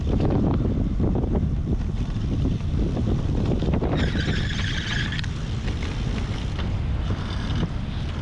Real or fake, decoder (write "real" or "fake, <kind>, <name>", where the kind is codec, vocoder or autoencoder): fake, vocoder, BigVGAN v2